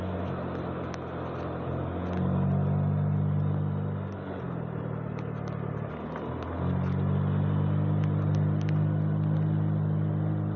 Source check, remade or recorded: recorded